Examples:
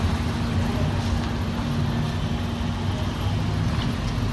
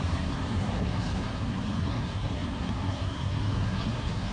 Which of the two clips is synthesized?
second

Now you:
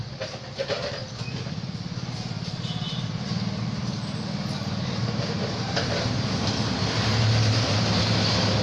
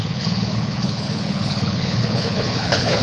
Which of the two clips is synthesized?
second